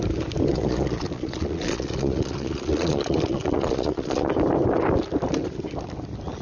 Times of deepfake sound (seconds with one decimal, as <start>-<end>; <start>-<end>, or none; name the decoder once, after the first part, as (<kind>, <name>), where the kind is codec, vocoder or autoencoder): 0.5-4.3 (vocoder, Vocos)